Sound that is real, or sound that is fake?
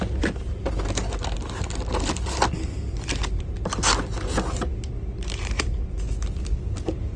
real